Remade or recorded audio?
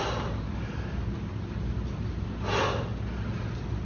recorded